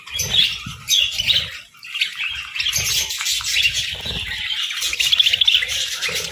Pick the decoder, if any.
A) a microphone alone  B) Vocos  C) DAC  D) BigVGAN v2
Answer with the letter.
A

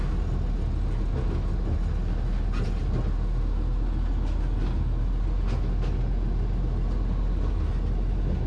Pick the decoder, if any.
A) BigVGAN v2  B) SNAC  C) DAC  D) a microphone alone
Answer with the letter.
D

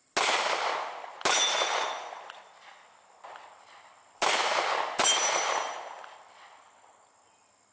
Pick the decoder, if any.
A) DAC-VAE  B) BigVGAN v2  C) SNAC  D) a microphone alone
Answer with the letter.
D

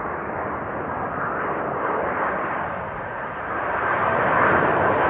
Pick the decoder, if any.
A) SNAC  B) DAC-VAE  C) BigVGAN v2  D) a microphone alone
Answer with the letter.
C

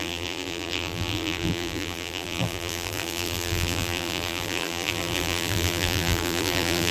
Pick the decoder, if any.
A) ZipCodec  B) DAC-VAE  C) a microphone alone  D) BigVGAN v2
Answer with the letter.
D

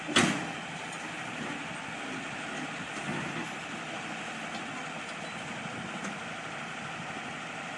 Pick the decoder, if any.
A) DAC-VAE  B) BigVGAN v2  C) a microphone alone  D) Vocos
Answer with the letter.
C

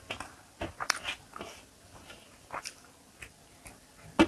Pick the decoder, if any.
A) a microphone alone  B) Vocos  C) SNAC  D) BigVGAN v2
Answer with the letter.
A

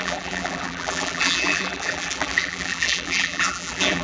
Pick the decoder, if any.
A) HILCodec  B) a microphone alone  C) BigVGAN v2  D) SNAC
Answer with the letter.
C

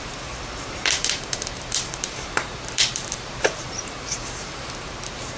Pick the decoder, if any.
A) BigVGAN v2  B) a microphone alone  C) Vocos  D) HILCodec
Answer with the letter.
A